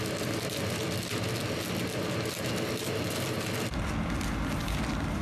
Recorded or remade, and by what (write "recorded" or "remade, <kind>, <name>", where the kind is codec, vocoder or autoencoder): recorded